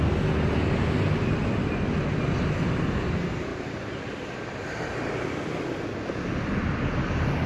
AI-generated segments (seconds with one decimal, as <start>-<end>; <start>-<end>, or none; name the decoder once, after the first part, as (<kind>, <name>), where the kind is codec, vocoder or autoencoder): none